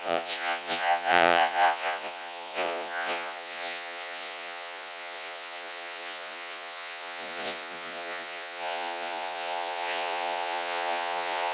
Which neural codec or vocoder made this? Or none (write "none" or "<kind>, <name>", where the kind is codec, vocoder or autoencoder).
vocoder, Vocos